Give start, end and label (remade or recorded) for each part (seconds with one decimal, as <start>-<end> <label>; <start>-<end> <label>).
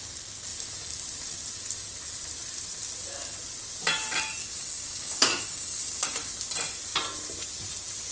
0.0-4.4 recorded; 4.4-6.3 remade; 6.3-8.1 recorded